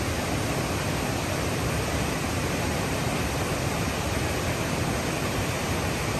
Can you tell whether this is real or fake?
real